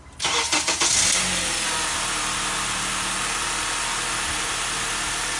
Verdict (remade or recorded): recorded